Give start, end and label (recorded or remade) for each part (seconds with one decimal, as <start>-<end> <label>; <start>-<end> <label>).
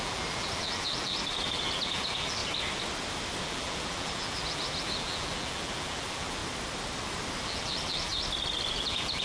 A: 0.0-2.4 remade; 2.4-3.4 recorded; 3.4-6.4 remade; 6.4-7.4 recorded; 7.4-8.1 remade; 8.1-8.7 recorded; 8.7-9.2 remade